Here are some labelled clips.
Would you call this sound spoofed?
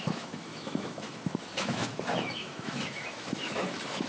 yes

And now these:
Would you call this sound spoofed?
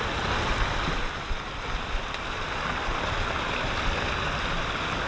no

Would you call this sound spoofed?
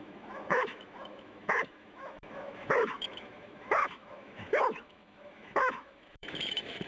yes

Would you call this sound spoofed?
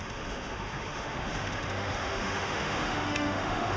yes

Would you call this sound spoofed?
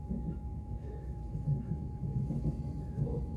yes